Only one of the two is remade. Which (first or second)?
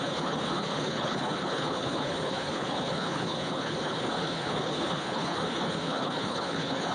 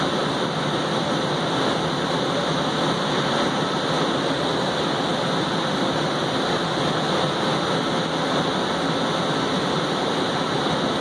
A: first